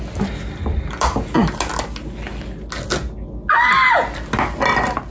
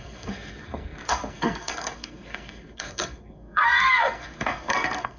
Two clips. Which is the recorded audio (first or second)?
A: first